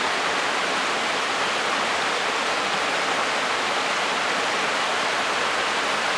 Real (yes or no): yes